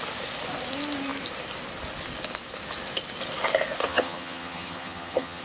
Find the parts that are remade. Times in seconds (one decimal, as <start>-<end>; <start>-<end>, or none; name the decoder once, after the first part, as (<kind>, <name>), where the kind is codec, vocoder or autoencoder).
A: 3.8-5.4 (vocoder, HiFi-GAN)

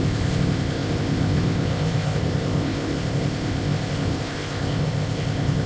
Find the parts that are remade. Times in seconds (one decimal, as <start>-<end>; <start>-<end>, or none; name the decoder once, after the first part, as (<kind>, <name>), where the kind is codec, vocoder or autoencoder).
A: 0.0-5.7 (codec, ZipCodec)

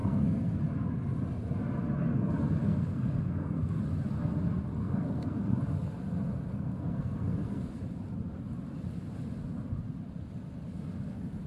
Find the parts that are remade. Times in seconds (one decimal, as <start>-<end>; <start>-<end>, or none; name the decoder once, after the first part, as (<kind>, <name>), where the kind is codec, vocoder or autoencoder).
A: 0.0-0.6 (codec, SNAC); 2.6-3.8; 4.8-5.6; 6.5-7.8